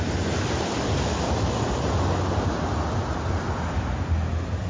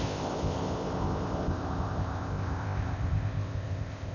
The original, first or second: first